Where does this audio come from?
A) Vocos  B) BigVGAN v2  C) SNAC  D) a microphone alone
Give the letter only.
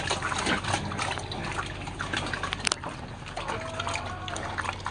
D